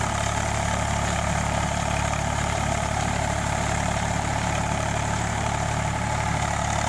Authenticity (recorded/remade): remade